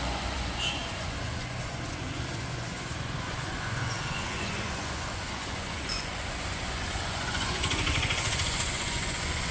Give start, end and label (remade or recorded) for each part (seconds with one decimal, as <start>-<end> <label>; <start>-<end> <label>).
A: 0.0-9.5 remade

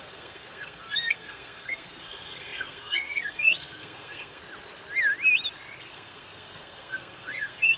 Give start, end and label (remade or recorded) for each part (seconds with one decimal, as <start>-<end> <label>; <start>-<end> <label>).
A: 0.0-4.4 remade; 4.4-5.8 recorded; 5.8-7.8 remade